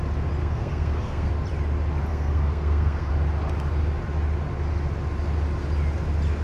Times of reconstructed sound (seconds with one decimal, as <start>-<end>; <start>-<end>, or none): 0.4-1.3; 2.1-3.1